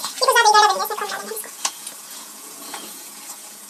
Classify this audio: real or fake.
fake